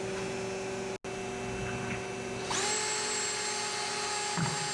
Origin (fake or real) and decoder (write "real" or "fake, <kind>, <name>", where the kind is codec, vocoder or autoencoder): real